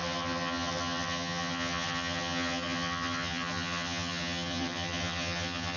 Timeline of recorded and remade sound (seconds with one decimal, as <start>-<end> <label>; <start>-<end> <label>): 0.0-5.8 remade